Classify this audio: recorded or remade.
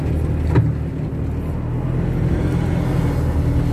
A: recorded